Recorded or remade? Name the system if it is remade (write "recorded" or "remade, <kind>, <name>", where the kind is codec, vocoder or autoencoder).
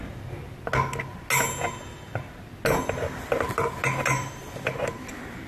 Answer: recorded